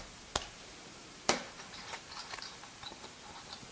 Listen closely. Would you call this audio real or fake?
fake